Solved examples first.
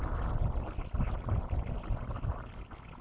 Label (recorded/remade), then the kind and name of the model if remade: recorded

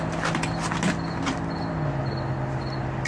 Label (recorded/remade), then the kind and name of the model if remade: recorded